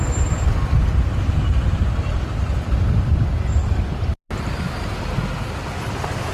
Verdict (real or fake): real